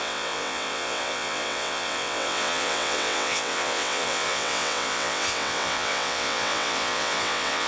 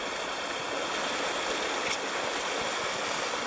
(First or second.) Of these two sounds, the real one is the second